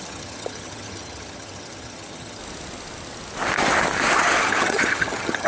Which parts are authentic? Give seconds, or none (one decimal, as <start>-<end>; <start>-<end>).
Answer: 2.4-4.4